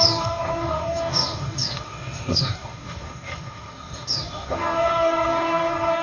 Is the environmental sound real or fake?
fake